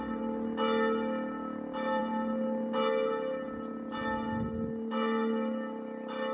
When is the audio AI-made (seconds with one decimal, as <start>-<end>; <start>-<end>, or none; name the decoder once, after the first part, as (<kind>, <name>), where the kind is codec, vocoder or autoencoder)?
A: none